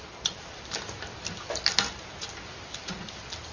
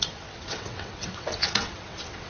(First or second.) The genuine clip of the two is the first